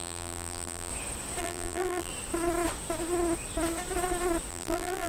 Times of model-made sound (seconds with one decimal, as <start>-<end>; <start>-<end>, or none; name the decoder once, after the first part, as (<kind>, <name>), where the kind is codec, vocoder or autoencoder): 0.0-0.9 (vocoder, BigVGAN v2); 1.4-2.1; 4.5-5.1